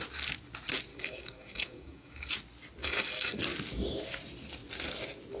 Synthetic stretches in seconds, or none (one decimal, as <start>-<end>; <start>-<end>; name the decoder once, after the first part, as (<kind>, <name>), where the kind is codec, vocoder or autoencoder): 0.9-2.3 (codec, DAC); 2.8-3.4